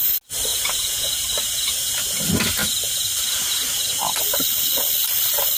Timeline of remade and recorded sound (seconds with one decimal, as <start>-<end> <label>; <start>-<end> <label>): 0.0-0.5 recorded; 0.5-1.2 remade; 1.2-1.7 recorded; 1.7-2.2 remade; 2.2-5.6 recorded